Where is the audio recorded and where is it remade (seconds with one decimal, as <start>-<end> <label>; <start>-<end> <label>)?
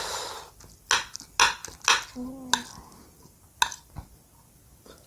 0.0-5.1 recorded